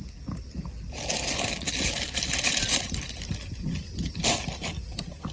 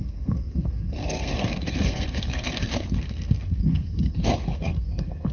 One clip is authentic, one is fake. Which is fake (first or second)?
second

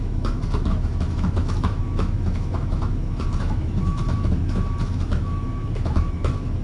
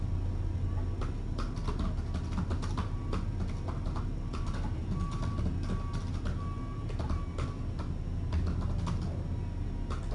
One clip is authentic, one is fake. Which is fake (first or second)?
first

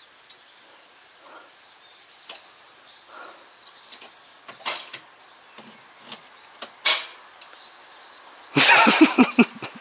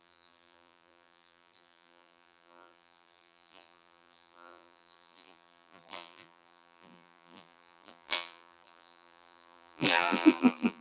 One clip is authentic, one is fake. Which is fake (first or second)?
second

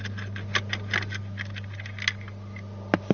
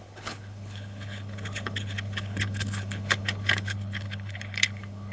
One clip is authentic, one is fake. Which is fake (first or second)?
second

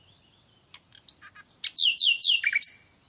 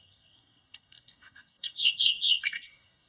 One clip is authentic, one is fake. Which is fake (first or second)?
second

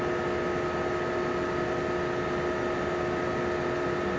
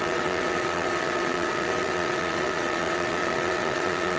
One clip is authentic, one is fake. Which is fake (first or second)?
second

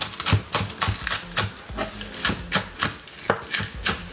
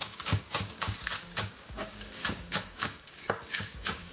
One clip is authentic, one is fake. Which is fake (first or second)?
second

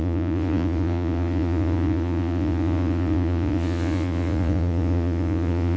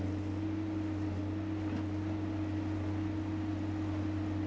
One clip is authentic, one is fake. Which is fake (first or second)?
first